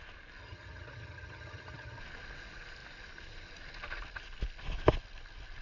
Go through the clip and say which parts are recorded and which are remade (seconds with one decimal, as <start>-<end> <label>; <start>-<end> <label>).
0.0-0.4 recorded; 0.4-2.0 remade; 2.0-5.6 recorded